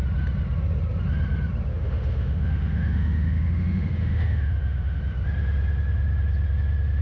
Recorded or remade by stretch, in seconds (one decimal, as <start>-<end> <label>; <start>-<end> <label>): 0.0-1.7 recorded; 1.7-5.0 remade; 5.0-7.0 recorded